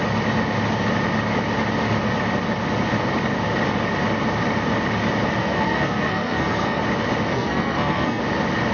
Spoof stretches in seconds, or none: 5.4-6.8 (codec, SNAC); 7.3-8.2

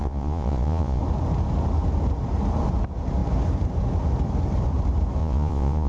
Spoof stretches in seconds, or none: 0.0-1.0 (vocoder, Vocos); 5.2-5.9

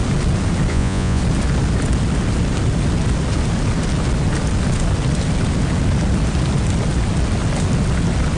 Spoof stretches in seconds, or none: 0.7-1.2 (vocoder, Vocos)

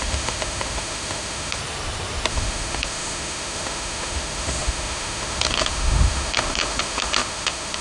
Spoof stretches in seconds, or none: 0.0-1.6 (autoencoder, DAC-VAE); 2.3-7.8

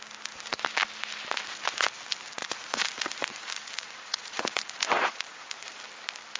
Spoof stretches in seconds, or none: 2.4-5.8 (vocoder, Vocos)

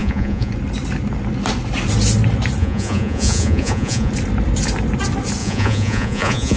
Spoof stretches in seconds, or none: 0.0-0.5 (vocoder, Vocos); 2.6-4.1; 5.4-6.6

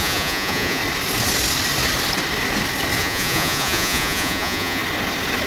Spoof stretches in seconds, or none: 0.0-0.8 (vocoder, Vocos); 3.0-4.8

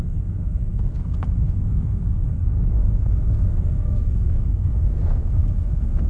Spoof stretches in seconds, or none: 0.0-6.1 (codec, SNAC)